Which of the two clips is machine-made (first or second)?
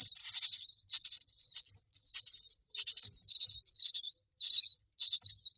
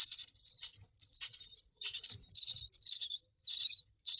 second